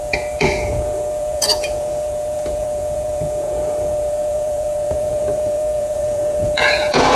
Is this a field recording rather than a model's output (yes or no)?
no